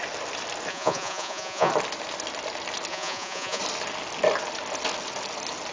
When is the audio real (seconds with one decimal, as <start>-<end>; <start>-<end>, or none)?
0.0-0.7; 1.7-2.9; 3.6-5.7